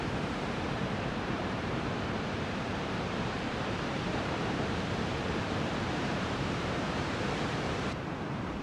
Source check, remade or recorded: remade